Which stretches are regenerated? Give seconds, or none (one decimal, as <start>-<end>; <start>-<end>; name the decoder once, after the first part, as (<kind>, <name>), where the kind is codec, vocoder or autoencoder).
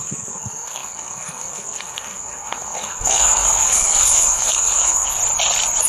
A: 0.0-5.2 (codec, SNAC)